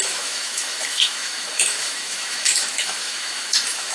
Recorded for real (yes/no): no